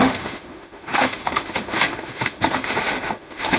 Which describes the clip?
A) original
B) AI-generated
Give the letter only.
B